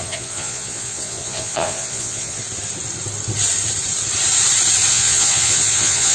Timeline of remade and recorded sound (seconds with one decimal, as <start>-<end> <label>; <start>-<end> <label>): 0.0-2.4 remade; 2.4-4.9 recorded; 4.9-6.1 remade